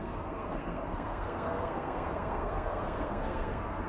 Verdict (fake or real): fake